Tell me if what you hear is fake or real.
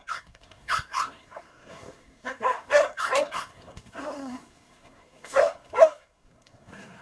fake